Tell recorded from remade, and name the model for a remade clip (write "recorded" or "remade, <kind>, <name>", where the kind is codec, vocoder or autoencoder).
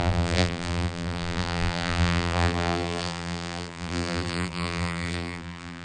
remade, vocoder, BigVGAN v2